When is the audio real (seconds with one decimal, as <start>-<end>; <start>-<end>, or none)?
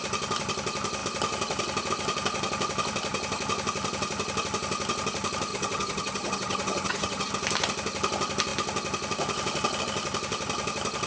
0.0-5.5; 7.3-11.1